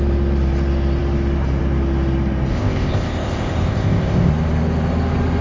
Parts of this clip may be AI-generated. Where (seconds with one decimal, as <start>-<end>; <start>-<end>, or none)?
2.5-4.3